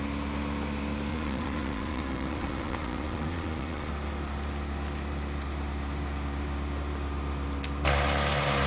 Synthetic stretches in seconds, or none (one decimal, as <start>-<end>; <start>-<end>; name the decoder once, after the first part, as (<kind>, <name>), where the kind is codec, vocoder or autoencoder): 1.1-3.9 (vocoder, Vocos)